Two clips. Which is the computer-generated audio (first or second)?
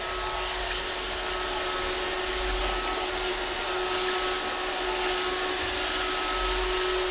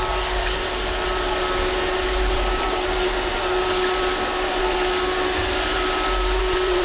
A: second